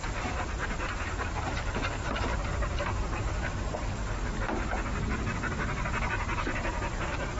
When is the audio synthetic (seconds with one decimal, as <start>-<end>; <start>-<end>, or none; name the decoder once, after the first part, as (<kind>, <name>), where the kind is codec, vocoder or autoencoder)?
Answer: 0.9-4.0 (vocoder, BigVGAN v2)